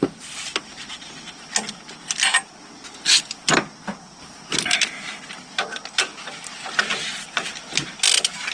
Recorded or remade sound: recorded